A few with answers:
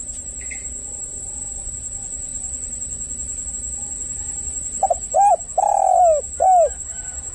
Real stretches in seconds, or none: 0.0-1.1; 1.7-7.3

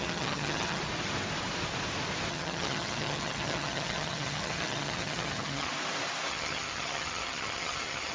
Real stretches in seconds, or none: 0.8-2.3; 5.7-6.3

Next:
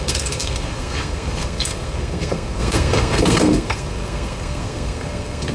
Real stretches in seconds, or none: none

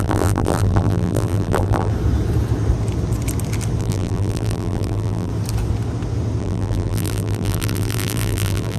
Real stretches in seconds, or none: 1.9-3.8; 5.3-6.4

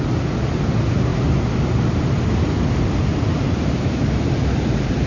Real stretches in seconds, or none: 0.0-1.1; 4.2-5.1

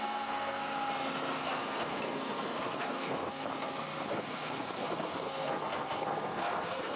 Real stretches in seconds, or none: 0.6-1.4; 3.5-4.1

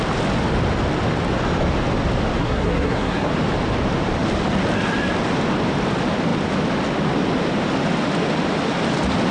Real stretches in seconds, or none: 0.0-2.4; 3.3-9.3